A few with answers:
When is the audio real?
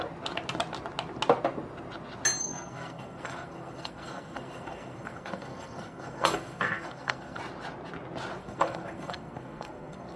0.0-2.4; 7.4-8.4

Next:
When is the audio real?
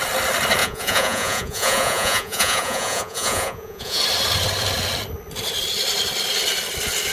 0.0-0.6; 4.0-7.1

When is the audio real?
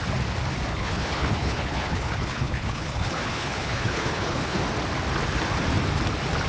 0.0-0.7; 4.6-6.5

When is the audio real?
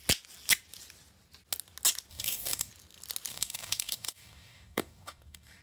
0.0-2.1; 2.7-3.3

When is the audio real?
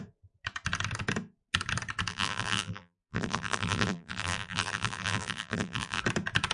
0.0-2.1; 6.0-6.5